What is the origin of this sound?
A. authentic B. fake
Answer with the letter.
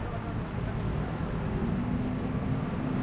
A